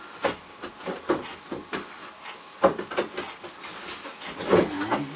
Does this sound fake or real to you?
real